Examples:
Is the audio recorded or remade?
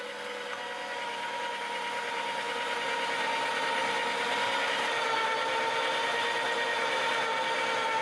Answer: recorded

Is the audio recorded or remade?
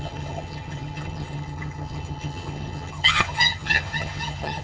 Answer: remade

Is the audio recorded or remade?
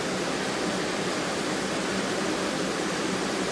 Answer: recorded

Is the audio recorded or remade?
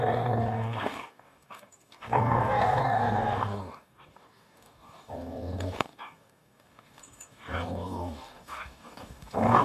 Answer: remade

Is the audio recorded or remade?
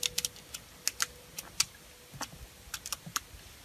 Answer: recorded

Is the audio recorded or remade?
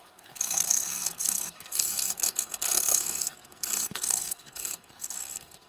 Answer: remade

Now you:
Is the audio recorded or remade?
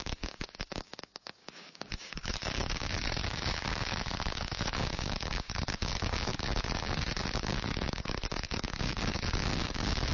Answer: remade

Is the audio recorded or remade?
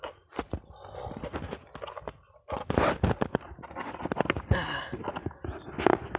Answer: recorded